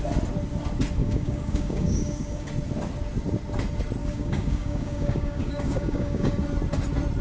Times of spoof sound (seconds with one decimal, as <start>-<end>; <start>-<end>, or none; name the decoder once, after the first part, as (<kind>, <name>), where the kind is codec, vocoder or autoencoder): 1.0-2.5 (codec, DAC); 4.0-6.3